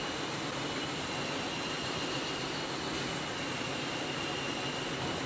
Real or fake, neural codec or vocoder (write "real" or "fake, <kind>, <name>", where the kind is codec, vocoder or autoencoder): real